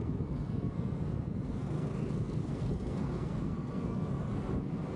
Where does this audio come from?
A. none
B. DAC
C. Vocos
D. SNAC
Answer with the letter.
D